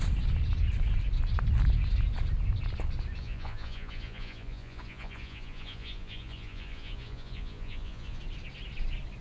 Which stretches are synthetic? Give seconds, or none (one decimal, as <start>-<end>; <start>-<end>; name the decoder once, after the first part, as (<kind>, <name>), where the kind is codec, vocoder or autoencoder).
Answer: 3.2-8.2 (vocoder, Vocos)